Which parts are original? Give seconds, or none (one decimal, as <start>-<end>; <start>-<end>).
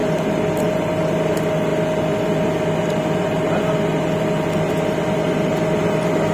0.0-6.3